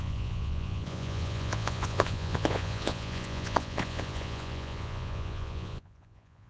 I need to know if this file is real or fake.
fake